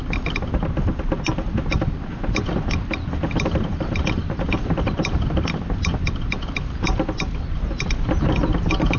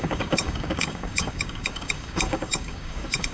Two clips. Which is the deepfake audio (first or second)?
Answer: second